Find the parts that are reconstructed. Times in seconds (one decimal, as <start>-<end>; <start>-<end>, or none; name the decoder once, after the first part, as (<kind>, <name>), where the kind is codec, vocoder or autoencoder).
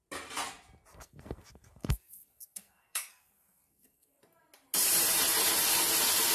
0.9-4.2 (codec, SNAC)